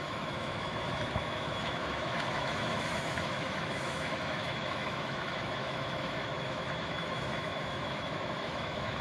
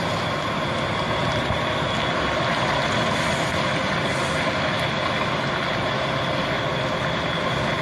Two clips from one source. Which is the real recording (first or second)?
second